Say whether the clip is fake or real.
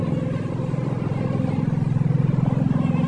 real